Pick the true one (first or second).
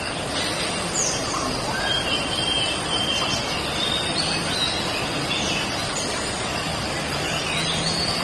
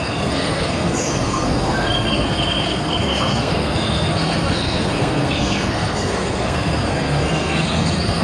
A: first